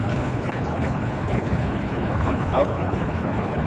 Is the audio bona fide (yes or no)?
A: no